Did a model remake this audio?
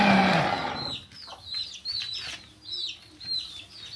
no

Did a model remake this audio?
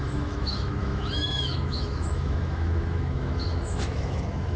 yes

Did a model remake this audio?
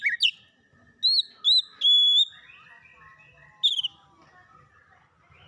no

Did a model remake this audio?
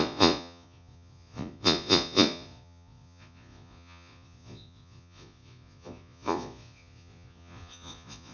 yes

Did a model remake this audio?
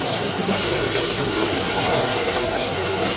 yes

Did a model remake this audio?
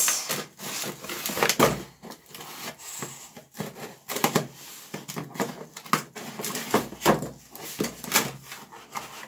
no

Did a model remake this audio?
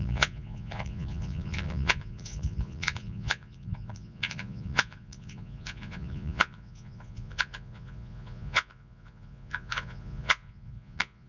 yes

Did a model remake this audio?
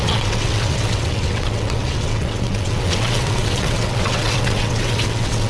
yes